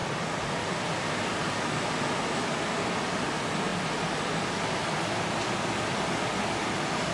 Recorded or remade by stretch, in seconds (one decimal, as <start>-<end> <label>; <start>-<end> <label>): 0.0-7.1 recorded